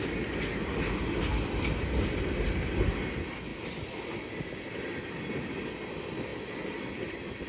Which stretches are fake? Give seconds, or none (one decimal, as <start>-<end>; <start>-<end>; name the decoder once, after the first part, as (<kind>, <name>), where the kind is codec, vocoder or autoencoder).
none